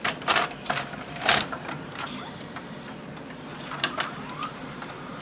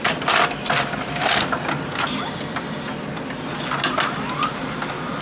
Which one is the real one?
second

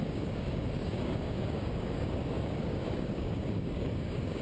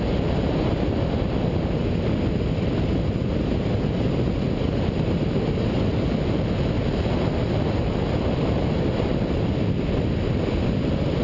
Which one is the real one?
second